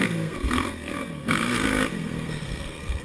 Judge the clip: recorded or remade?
remade